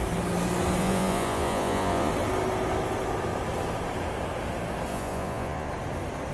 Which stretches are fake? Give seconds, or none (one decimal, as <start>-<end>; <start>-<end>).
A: 0.8-2.1; 4.9-5.7